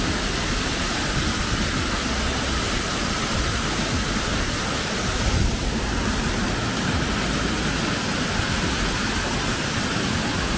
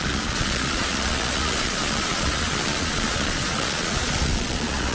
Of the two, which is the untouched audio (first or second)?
first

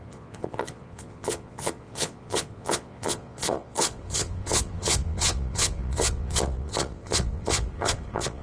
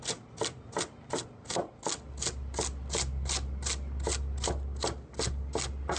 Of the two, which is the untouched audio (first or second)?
second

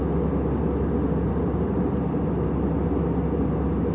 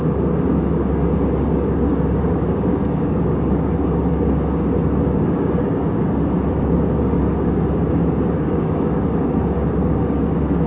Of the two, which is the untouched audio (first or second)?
first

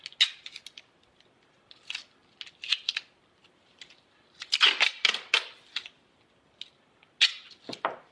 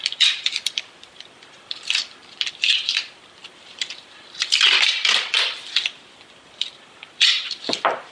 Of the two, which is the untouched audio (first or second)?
first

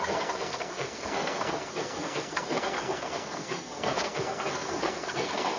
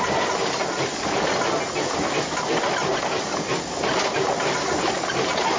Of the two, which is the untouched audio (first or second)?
second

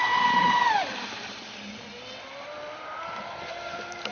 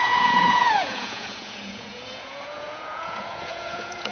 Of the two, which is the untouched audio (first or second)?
first